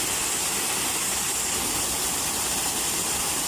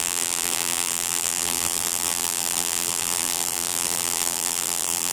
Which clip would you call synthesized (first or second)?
second